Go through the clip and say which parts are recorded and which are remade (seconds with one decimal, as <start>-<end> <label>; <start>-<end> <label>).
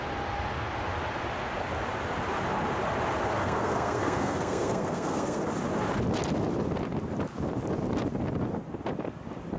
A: 0.0-3.4 recorded; 3.4-5.4 remade; 5.4-9.6 recorded